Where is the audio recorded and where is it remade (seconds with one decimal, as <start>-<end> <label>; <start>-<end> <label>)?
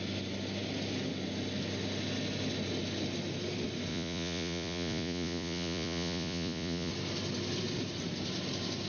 0.0-3.9 recorded; 3.9-6.9 remade; 6.9-8.9 recorded